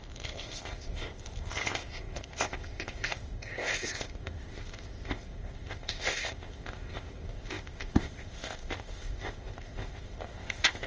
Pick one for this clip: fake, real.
fake